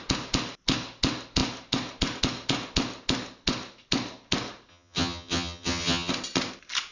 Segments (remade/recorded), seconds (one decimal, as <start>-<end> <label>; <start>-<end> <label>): 0.0-4.7 recorded; 4.7-6.1 remade; 6.1-6.9 recorded